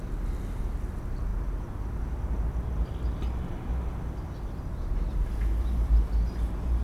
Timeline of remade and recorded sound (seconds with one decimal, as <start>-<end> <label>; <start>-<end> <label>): 0.0-6.8 recorded